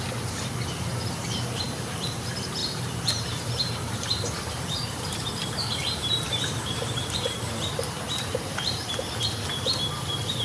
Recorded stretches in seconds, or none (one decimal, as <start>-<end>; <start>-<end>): none